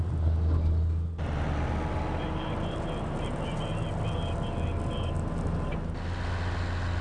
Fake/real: real